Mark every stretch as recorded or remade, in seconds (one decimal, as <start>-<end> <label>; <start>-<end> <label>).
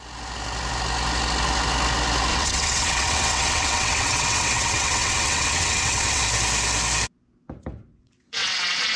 0.0-2.3 recorded; 2.3-6.2 remade; 6.2-7.9 recorded; 7.9-9.0 remade